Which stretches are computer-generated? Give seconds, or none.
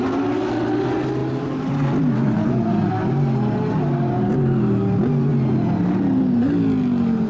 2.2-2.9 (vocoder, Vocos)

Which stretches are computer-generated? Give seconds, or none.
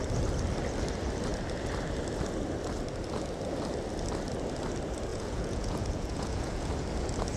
5.1-6.7 (vocoder, Vocos)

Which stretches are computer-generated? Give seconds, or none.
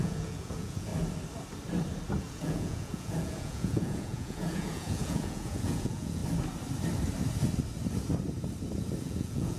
0.0-0.9 (vocoder, Vocos); 2.2-6.2; 9.0-9.6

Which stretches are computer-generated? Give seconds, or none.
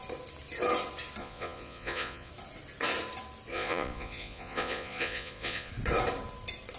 1.2-2.3 (vocoder, Vocos); 3.5-5.7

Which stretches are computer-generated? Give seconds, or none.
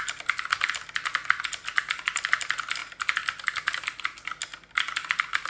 none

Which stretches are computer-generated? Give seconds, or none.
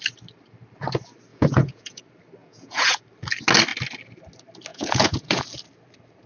1.3-2.0 (vocoder, Vocos); 2.4-3.0; 4.7-5.4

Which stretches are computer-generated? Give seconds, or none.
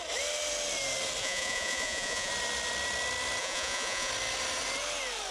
1.2-2.3 (vocoder, Vocos); 3.4-4.1